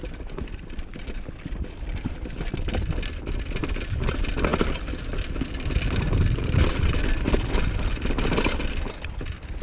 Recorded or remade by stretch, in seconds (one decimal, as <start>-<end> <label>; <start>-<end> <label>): 0.0-9.6 recorded

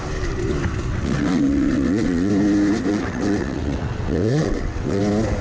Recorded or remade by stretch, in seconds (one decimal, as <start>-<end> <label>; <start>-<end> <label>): 0.0-0.9 recorded; 0.9-2.3 remade; 2.3-2.9 recorded; 2.9-5.0 remade; 5.0-5.4 recorded

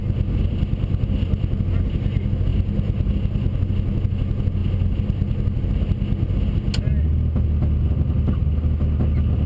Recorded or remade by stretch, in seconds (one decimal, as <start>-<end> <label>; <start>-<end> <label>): 0.0-9.5 recorded

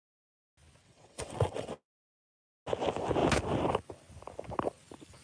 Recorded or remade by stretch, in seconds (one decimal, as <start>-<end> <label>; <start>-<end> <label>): 0.0-0.8 recorded; 0.8-1.7 remade; 1.7-5.2 recorded

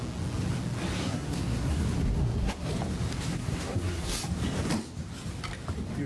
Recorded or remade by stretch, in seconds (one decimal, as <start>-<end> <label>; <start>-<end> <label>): 0.0-1.0 recorded; 1.0-2.7 remade; 2.7-3.3 recorded; 3.3-4.1 remade; 4.1-6.1 recorded

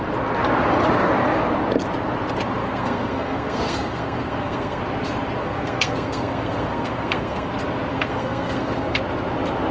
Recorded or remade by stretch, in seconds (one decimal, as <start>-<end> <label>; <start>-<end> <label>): 0.0-2.6 recorded; 2.6-4.8 remade; 4.8-5.4 recorded; 5.4-7.5 remade; 7.5-7.9 recorded; 7.9-9.0 remade; 9.0-9.7 recorded

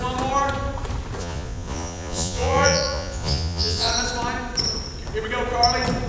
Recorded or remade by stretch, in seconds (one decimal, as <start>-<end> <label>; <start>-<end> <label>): 0.0-1.2 recorded; 1.2-3.9 remade; 3.9-6.1 recorded

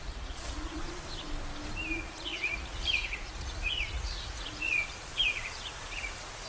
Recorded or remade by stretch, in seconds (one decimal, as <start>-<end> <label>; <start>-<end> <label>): 0.0-0.8 remade; 0.8-1.9 recorded; 1.9-6.5 remade